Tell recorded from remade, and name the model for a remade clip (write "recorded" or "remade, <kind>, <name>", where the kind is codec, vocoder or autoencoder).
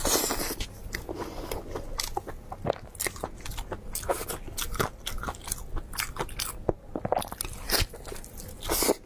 recorded